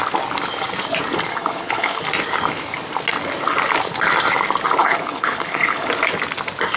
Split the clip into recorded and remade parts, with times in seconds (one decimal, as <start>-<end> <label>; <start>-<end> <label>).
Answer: 0.0-1.3 recorded; 1.3-2.0 remade; 2.0-4.8 recorded; 4.8-5.9 remade; 5.9-6.8 recorded